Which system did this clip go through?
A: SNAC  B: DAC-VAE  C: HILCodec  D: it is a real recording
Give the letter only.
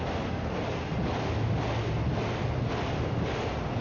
D